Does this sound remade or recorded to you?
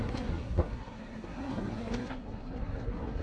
remade